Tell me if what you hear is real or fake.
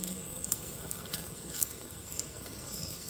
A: fake